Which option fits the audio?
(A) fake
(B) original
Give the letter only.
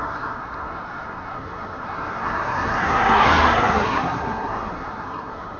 A